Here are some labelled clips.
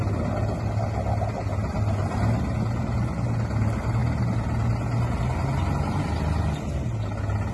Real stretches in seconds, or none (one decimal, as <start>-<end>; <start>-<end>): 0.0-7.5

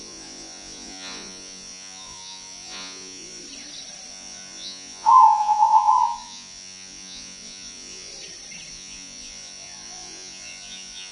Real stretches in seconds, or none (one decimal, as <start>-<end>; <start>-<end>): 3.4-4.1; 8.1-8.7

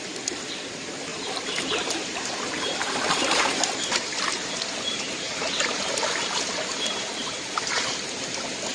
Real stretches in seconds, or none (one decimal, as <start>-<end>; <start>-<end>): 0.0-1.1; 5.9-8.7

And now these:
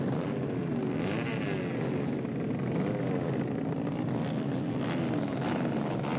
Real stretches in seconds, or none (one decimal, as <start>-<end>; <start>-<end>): 0.0-6.2

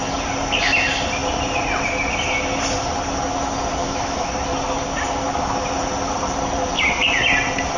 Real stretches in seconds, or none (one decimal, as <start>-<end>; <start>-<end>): 0.0-3.8; 4.3-7.8